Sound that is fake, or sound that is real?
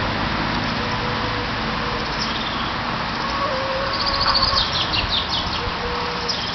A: real